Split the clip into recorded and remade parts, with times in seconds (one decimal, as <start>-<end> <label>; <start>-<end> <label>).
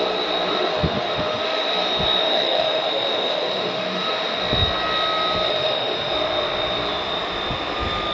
0.0-0.5 recorded; 0.5-1.7 remade; 1.7-2.2 recorded; 2.2-4.4 remade; 4.4-5.5 recorded; 5.5-6.1 remade; 6.1-8.1 recorded